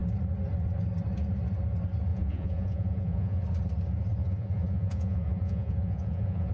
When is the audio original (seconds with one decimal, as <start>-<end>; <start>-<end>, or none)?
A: 0.0-2.1; 3.4-4.2